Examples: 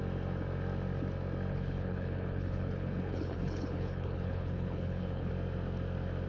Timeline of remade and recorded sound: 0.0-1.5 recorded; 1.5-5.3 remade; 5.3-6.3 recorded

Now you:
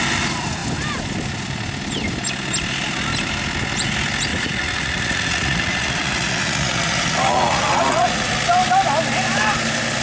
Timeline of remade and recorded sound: 0.0-4.3 recorded; 4.3-8.3 remade; 8.3-10.0 recorded

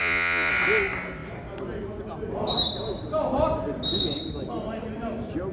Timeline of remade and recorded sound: 0.0-0.5 remade; 0.5-5.5 recorded

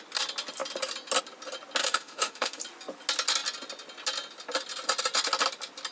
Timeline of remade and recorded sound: 0.0-1.8 recorded; 1.8-2.6 remade; 2.6-5.9 recorded

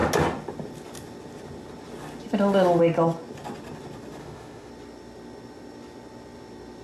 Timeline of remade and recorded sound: 0.0-4.2 recorded; 4.2-4.7 remade; 4.7-6.8 recorded

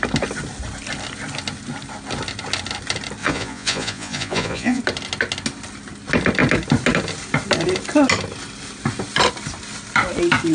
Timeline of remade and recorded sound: 0.0-3.2 recorded; 3.2-4.8 remade; 4.8-10.5 recorded

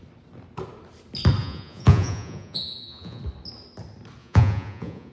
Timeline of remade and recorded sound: 0.0-1.4 recorded; 1.4-3.2 remade; 3.2-4.2 recorded; 4.2-5.1 remade

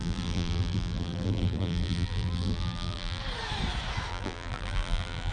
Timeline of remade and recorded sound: 0.0-3.2 remade; 3.2-4.1 recorded; 4.1-5.3 remade